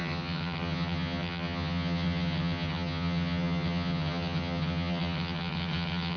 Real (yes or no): no